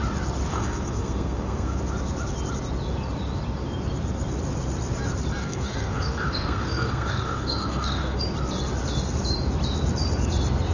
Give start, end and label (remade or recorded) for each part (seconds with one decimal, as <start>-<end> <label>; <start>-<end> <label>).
0.0-0.5 recorded; 0.5-1.8 remade; 1.8-5.4 recorded; 5.4-8.2 remade; 8.2-10.7 recorded